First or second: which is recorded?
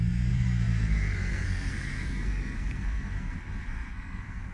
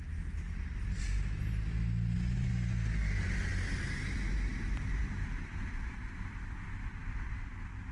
second